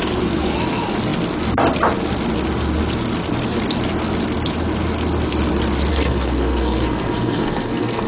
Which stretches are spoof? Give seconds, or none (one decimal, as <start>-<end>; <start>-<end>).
5.9-8.1